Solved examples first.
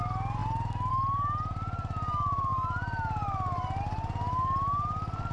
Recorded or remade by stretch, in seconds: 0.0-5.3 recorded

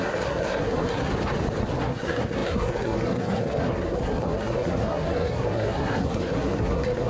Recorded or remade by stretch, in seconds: 0.0-1.1 remade; 1.1-1.8 recorded; 1.8-7.1 remade

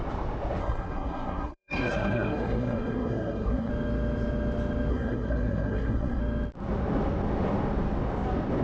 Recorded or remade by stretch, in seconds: 0.0-0.6 recorded; 0.6-3.7 remade; 3.7-4.9 recorded; 4.9-6.2 remade; 6.2-8.6 recorded

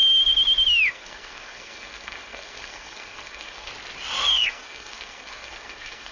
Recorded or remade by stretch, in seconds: 0.0-0.9 recorded; 0.9-3.7 remade; 3.7-4.3 recorded; 4.3-6.1 remade

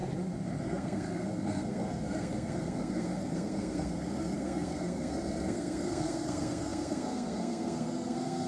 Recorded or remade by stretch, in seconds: 0.0-0.6 recorded; 0.6-8.5 remade